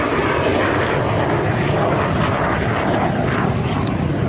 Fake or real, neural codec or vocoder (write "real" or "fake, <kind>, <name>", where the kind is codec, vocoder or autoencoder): real